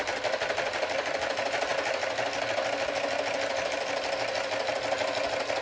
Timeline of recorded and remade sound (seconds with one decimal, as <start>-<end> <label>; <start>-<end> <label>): 0.0-5.6 recorded